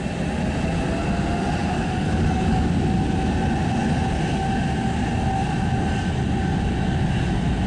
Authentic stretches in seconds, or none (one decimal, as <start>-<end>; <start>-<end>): 0.0-1.6; 2.7-7.7